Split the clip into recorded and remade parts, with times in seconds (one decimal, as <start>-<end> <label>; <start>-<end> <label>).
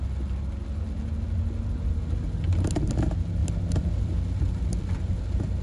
0.0-5.6 recorded